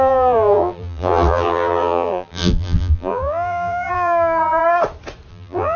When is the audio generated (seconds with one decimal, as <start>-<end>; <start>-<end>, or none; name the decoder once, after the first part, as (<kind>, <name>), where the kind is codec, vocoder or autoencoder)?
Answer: 0.0-4.6 (vocoder, BigVGAN v2); 5.3-5.8

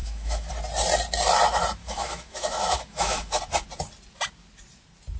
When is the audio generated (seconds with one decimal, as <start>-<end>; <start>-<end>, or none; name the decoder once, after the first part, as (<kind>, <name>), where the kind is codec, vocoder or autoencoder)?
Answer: 0.0-0.5 (autoencoder, DAC-VAE); 1.8-3.4

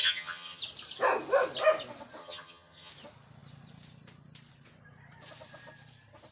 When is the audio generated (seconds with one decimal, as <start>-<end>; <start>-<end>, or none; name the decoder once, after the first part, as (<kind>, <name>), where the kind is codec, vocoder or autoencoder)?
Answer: 0.0-0.6 (vocoder, HiFi-GAN); 2.2-2.9

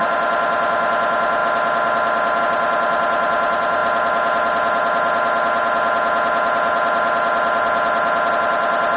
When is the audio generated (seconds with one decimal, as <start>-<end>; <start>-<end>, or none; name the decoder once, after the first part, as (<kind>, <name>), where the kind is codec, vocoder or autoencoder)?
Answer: none